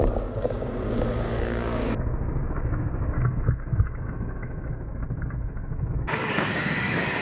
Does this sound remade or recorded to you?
remade